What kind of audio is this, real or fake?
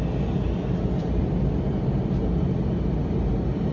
real